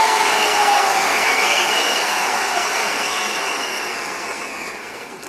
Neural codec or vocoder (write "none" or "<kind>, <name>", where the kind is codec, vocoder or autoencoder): codec, SNAC